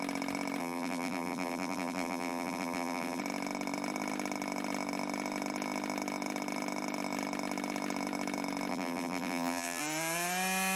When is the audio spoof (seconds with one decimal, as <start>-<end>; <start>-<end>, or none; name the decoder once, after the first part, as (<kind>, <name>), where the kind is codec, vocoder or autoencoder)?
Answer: 0.6-3.2 (vocoder, BigVGAN v2); 8.7-9.8